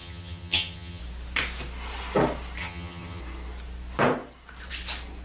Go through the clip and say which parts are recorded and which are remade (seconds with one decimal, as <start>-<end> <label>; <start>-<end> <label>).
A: 0.0-1.0 remade; 1.0-2.6 recorded; 2.6-3.2 remade; 3.2-5.2 recorded